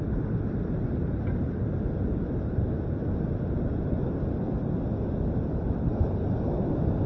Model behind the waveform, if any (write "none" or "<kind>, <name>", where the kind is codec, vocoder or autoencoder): none